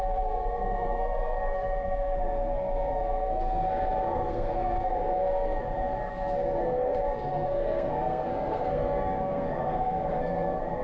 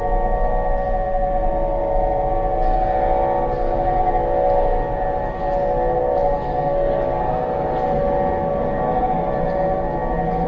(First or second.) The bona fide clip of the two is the second